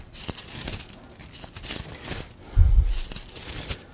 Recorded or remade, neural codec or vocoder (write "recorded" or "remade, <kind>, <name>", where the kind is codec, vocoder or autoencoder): recorded